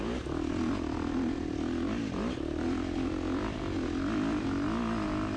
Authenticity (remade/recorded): recorded